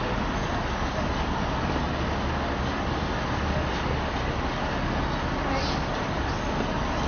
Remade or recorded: recorded